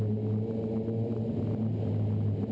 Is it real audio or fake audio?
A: real